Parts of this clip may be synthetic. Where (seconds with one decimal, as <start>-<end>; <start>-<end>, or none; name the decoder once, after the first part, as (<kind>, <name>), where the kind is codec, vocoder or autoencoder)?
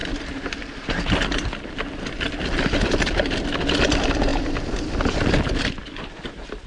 4.3-4.9 (vocoder, BigVGAN v2)